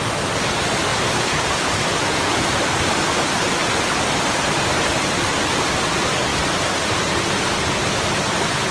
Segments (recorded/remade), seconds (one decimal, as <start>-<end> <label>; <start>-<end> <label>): 0.0-0.9 recorded; 0.9-5.2 remade; 5.2-8.7 recorded